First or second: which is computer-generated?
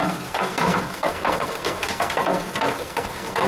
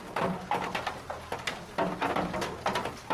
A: first